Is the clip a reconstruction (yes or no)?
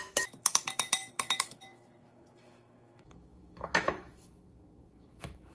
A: yes